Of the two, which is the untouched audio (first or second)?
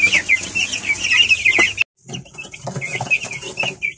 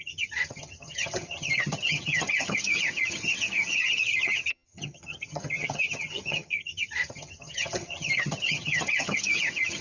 first